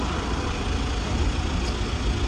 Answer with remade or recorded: recorded